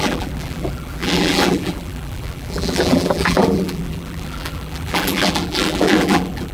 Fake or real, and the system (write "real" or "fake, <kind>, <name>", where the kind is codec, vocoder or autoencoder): fake, vocoder, BigVGAN v2